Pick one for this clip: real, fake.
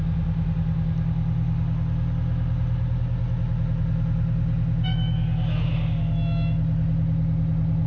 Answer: real